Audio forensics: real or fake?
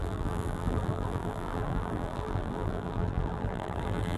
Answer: fake